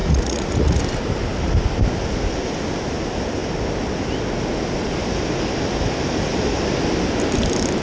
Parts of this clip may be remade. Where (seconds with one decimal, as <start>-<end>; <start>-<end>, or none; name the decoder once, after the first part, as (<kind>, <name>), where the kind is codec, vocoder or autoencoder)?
0.0-0.8 (vocoder, Vocos)